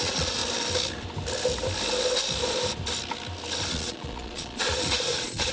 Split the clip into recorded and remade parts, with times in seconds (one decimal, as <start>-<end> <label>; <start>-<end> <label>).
0.0-0.4 remade; 0.4-3.7 recorded; 3.7-5.5 remade